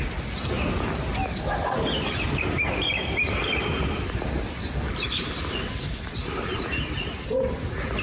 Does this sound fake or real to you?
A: real